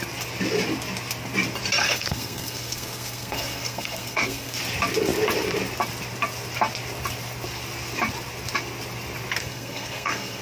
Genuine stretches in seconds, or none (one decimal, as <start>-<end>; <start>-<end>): 0.0-1.8; 4.6-9.4